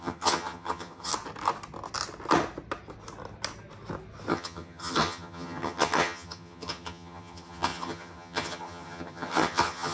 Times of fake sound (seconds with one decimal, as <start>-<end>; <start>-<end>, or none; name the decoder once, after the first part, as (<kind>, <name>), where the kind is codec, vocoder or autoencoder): 0.0-1.1 (vocoder, HiFi-GAN); 4.3-9.9